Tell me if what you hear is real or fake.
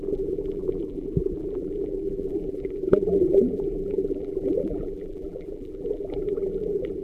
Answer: fake